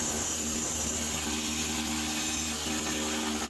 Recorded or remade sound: recorded